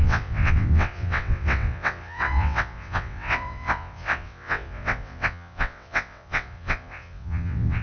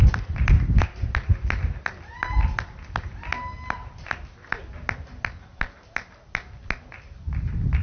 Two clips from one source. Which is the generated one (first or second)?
first